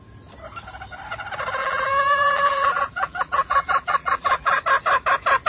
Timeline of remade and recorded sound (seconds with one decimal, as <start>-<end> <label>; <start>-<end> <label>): 0.0-1.6 recorded; 1.6-4.6 remade; 4.6-5.5 recorded